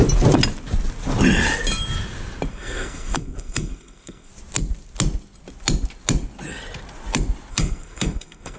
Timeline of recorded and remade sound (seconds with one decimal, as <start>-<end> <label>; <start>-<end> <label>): 0.0-2.5 recorded; 2.5-4.3 remade; 4.3-7.5 recorded; 7.5-8.6 remade